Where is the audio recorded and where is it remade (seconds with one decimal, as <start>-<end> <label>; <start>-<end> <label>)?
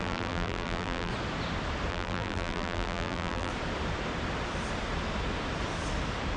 0.0-1.1 remade; 1.1-1.9 recorded; 1.9-3.5 remade; 3.5-6.4 recorded